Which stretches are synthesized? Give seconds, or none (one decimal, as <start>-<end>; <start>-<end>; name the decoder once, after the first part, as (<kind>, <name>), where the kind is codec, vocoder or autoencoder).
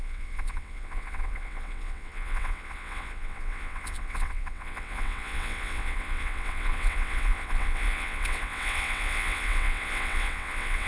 0.0-10.9 (vocoder, WaveNeXt)